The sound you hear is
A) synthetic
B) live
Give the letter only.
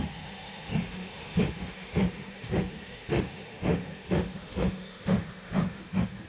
A